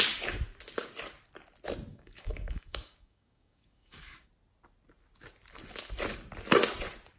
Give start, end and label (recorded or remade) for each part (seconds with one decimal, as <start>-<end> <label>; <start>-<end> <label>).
0.0-1.9 recorded; 1.9-4.3 remade; 4.3-7.2 recorded